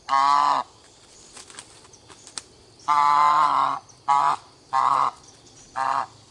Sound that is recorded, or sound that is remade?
recorded